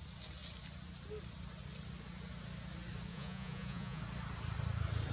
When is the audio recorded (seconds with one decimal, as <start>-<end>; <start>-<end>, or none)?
0.0-3.1; 4.0-5.1